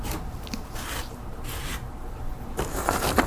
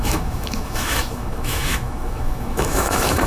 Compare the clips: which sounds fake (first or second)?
second